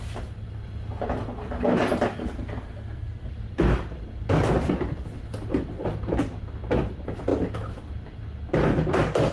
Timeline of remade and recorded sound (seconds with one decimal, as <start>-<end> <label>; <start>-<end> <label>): 0.0-2.2 recorded; 2.2-3.3 remade; 3.3-9.3 recorded